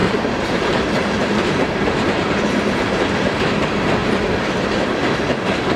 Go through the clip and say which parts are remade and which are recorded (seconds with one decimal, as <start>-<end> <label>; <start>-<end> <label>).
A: 0.0-3.4 remade; 3.4-5.8 recorded